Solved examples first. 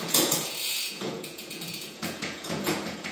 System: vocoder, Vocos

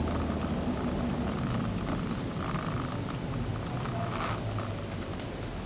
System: none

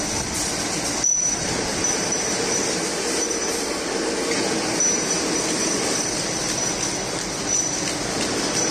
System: none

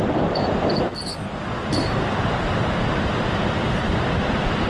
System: none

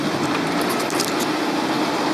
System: none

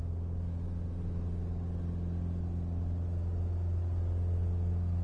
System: none